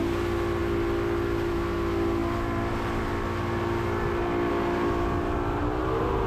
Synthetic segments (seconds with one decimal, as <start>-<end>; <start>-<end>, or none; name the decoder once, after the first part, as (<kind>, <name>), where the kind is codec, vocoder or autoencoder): none